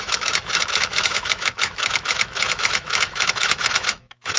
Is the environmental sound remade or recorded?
remade